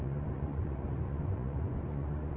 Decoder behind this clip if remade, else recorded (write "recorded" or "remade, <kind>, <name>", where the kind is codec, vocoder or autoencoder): remade, vocoder, Vocos